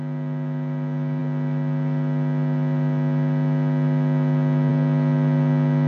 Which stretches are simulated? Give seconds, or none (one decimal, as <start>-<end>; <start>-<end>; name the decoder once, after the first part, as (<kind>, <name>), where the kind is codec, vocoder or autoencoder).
none